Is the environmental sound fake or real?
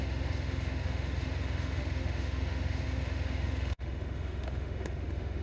fake